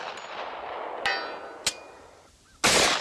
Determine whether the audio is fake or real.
real